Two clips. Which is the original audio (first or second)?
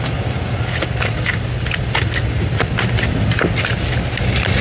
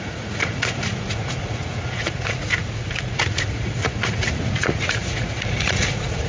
first